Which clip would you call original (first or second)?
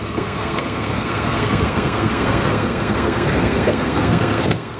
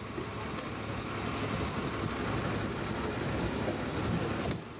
second